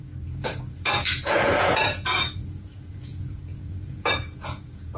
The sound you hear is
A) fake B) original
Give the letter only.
A